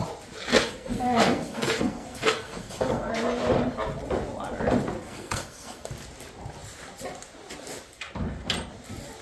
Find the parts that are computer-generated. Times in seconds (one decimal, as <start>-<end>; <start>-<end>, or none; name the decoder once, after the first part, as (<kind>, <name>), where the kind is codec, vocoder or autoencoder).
0.5-3.1 (codec, SNAC); 5.0-5.9